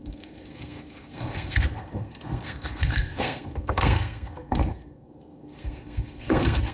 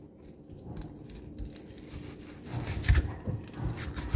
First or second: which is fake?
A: first